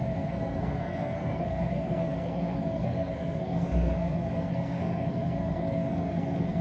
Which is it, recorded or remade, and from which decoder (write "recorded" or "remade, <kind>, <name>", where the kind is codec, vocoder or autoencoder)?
remade, codec, SNAC